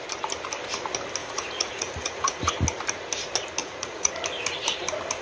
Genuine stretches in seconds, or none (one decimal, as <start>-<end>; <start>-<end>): 0.0-1.2; 2.5-3.6; 4.1-5.2